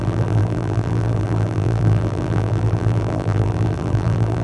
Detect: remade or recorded remade